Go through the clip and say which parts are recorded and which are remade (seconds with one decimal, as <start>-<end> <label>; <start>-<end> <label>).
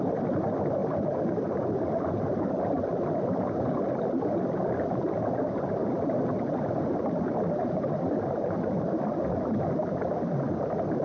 0.0-5.8 recorded; 5.8-9.9 remade; 9.9-11.0 recorded